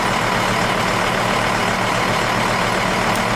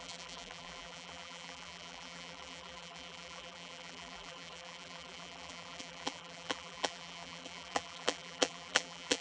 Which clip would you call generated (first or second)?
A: second